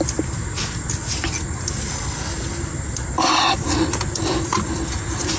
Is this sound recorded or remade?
recorded